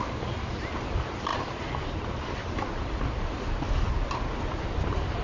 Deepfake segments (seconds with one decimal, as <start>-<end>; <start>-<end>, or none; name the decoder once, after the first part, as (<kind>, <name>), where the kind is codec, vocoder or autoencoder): none